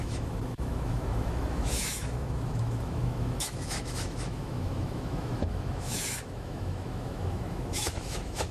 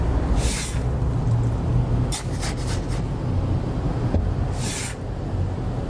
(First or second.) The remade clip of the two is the first